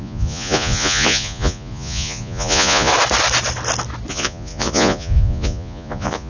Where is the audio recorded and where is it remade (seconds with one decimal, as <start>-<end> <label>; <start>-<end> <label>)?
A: 0.0-2.9 remade; 2.9-4.1 recorded; 4.1-6.3 remade